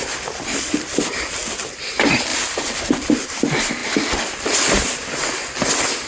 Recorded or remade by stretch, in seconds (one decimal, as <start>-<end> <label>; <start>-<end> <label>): 0.0-6.1 recorded